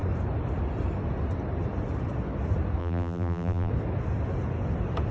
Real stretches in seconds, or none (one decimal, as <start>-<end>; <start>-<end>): 0.0-2.8; 3.7-5.1